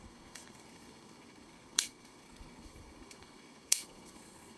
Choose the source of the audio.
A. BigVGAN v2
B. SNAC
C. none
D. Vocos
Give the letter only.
B